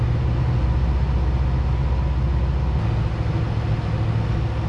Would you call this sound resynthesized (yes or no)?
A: no